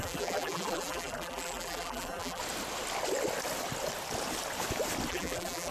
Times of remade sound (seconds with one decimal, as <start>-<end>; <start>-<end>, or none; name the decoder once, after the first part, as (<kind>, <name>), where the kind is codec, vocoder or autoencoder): 0.0-2.4 (vocoder, BigVGAN v2); 5.1-5.7